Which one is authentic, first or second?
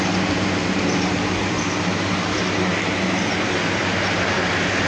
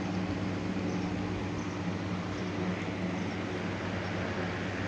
second